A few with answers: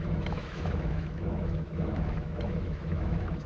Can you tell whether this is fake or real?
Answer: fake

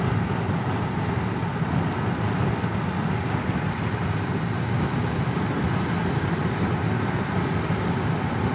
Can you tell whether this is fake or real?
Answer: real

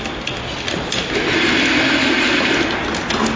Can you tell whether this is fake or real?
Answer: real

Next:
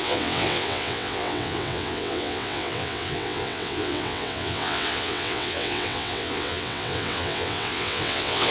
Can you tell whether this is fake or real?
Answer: fake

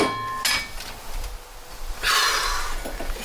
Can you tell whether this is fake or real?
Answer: real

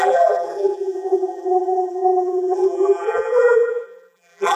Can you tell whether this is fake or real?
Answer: fake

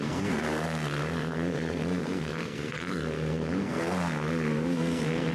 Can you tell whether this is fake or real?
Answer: fake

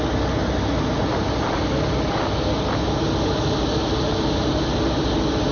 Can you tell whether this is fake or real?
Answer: real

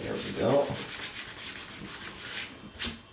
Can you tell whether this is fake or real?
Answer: real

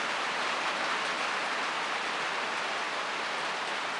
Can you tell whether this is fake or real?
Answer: real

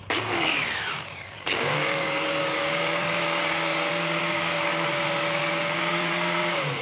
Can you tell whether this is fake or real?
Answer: fake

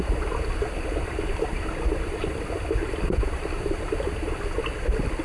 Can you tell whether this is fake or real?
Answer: real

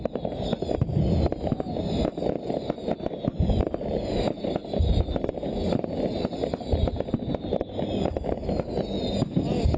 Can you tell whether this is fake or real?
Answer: real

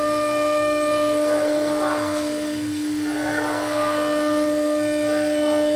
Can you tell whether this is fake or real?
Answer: fake